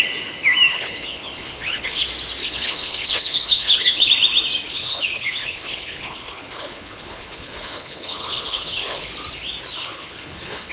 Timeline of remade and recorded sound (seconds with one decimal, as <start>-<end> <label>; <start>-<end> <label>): 0.0-0.7 recorded; 0.7-2.0 remade; 2.0-2.4 recorded; 2.4-4.1 remade; 4.1-4.7 recorded; 4.7-9.1 remade; 9.1-9.8 recorded; 9.8-10.7 remade